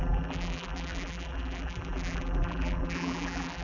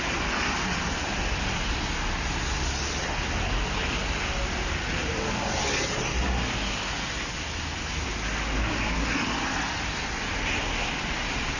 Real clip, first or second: second